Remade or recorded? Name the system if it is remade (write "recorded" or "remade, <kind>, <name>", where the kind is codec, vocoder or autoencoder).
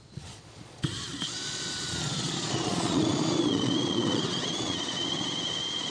remade, vocoder, Vocos